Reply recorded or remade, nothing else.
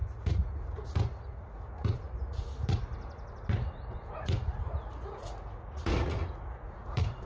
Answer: remade